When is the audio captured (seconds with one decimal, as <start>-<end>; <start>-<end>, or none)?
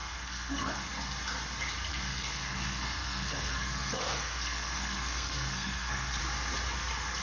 0.9-1.9; 6.2-7.2